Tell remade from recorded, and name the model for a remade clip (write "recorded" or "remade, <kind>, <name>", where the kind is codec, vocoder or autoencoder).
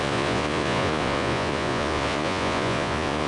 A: remade, vocoder, Vocos